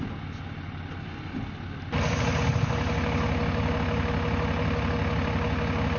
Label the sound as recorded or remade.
recorded